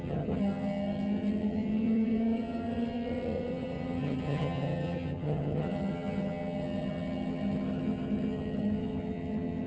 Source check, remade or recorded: remade